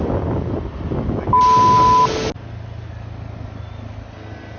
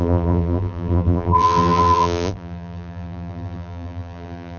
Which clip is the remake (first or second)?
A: second